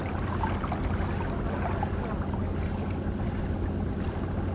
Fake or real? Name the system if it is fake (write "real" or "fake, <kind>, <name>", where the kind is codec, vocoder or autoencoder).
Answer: real